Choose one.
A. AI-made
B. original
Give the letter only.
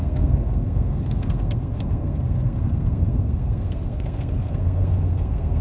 A